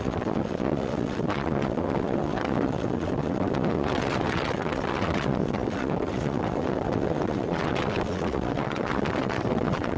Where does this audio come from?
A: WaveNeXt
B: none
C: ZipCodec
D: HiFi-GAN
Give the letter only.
A